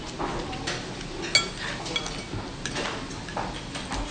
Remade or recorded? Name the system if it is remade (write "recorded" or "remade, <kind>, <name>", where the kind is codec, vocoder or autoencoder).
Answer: recorded